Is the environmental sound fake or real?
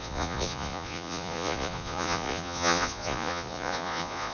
fake